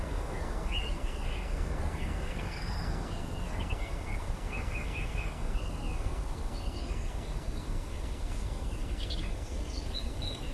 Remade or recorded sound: remade